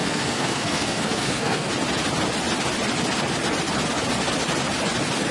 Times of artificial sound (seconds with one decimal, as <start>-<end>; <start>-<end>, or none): 0.0-1.7